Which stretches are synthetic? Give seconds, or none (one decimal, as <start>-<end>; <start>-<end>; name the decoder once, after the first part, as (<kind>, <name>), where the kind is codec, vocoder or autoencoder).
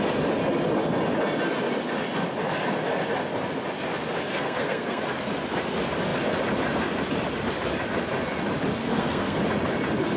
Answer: 4.3-5.0 (codec, SNAC); 8.8-9.4